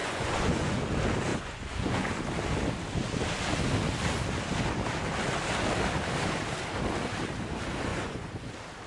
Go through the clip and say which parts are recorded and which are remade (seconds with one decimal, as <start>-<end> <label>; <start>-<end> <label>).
0.0-0.8 remade; 0.8-1.3 recorded; 1.3-2.1 remade; 2.1-7.9 recorded; 7.9-8.5 remade; 8.5-8.9 recorded